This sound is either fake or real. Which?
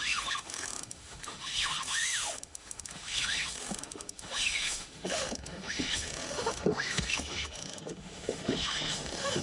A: fake